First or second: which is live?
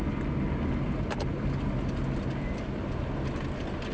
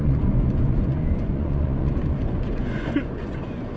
first